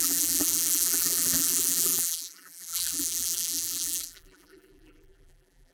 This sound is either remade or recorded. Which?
remade